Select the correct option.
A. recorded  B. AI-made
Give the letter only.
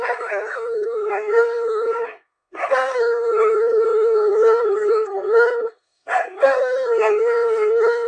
B